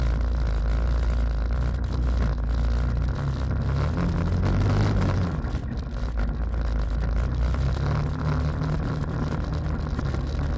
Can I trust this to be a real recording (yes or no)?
yes